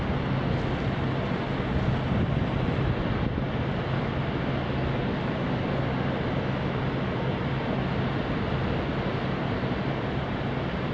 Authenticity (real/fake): real